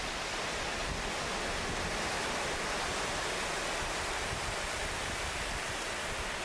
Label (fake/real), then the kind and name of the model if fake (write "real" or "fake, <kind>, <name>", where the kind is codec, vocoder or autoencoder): real